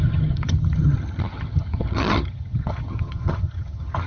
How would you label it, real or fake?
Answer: fake